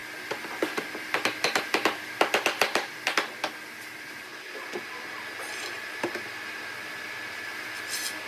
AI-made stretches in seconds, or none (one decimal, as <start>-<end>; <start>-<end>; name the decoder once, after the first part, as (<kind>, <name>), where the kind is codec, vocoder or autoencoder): none